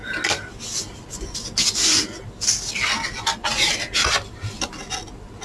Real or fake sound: real